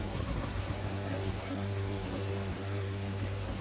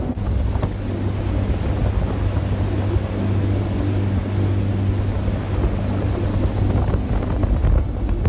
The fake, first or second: first